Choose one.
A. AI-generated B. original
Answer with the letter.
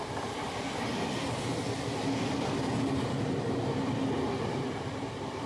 B